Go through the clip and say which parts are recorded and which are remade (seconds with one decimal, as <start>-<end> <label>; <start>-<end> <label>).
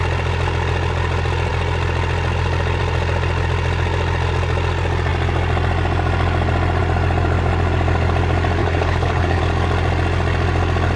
0.0-8.6 recorded; 8.6-9.4 remade; 9.4-11.0 recorded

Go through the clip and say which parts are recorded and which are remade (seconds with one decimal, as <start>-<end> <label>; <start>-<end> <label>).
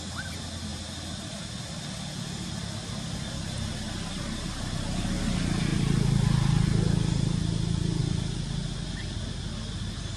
0.0-10.2 recorded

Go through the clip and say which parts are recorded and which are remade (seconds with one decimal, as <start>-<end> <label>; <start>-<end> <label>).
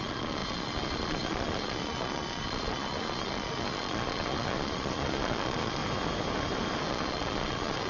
0.0-5.8 remade; 5.8-6.9 recorded; 6.9-7.9 remade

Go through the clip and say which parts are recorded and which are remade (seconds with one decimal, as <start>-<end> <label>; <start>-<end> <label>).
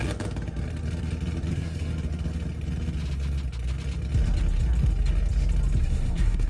0.0-1.5 recorded; 1.5-1.9 remade; 1.9-5.8 recorded; 5.8-6.5 remade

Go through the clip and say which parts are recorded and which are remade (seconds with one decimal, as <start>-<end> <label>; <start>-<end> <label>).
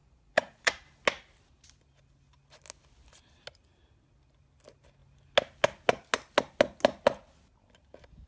0.0-0.7 remade; 0.7-8.3 recorded